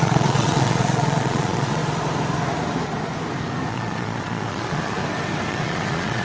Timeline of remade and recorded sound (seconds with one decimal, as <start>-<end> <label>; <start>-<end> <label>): 0.0-1.8 remade; 1.8-3.7 recorded; 3.7-5.0 remade; 5.0-5.5 recorded; 5.5-6.2 remade